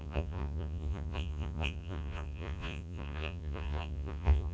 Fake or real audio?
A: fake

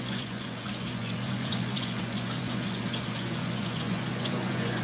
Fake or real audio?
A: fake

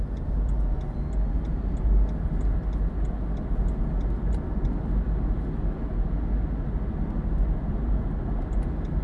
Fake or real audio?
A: real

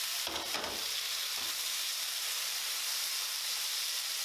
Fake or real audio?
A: fake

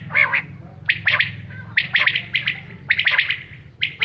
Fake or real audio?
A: real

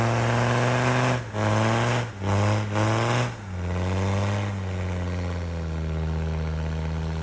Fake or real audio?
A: real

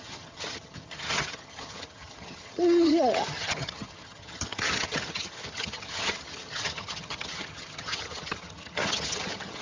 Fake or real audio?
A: fake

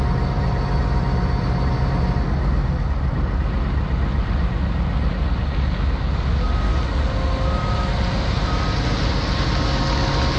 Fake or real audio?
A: real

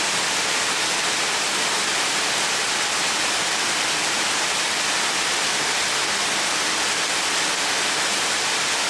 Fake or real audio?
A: real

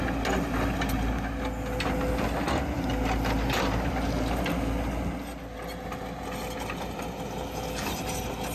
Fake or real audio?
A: real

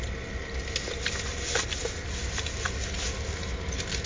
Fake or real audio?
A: real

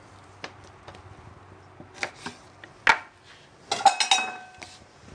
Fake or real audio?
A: real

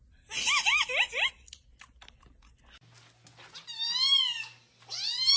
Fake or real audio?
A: real